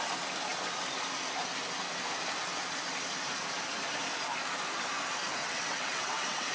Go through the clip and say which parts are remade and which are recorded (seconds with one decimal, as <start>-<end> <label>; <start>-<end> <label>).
0.0-5.4 recorded; 5.4-6.5 remade